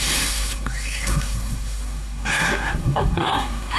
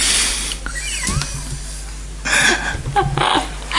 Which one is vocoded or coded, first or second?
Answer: first